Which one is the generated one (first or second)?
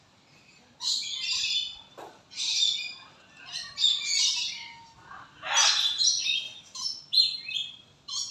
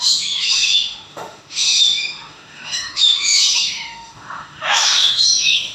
second